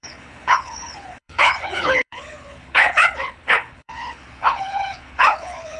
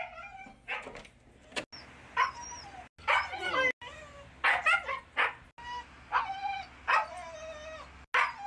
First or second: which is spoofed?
first